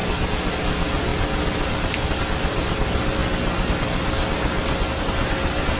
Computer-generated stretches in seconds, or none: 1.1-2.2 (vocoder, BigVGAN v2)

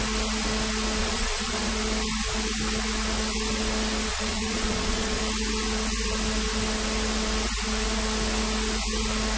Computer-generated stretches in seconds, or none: 1.0-1.7 (vocoder, Vocos); 4.1-5.2

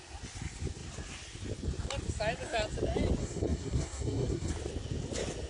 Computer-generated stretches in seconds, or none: 3.2-4.5 (codec, SNAC)

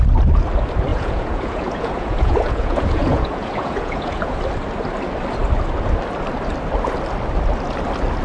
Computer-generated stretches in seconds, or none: 0.9-4.4 (vocoder, Vocos)

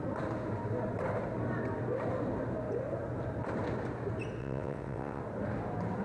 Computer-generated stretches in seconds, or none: 4.4-5.2 (vocoder, WaveNeXt)

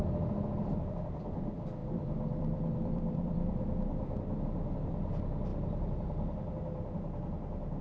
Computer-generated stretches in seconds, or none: 1.8-4.4 (vocoder, BigVGAN v2)

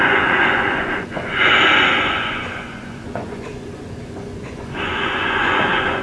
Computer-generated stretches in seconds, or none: 0.0-6.0 (vocoder, Vocos)